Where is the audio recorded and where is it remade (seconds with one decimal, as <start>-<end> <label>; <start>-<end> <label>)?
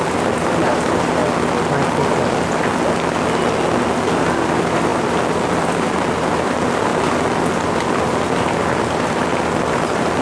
0.0-1.2 remade; 1.2-3.8 recorded; 3.8-10.2 remade